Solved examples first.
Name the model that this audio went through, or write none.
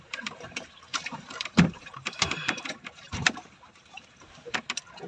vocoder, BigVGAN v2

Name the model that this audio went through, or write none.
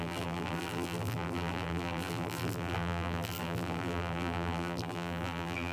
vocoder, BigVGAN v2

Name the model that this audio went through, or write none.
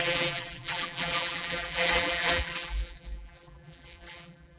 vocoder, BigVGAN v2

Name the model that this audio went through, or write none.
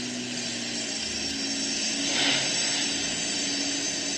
none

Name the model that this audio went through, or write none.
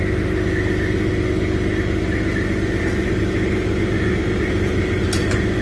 none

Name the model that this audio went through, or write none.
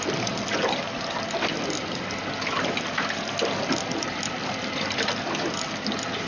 none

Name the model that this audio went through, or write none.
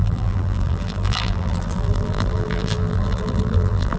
vocoder, BigVGAN v2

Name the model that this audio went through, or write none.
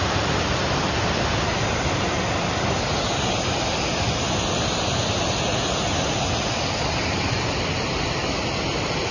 none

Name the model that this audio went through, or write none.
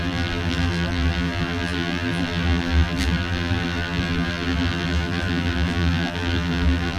vocoder, BigVGAN v2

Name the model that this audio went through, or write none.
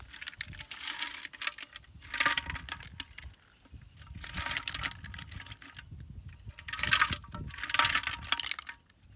none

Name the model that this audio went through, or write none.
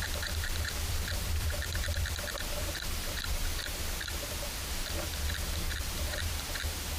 vocoder, BigVGAN v2